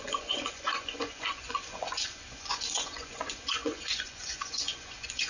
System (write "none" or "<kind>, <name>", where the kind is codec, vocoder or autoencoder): vocoder, Vocos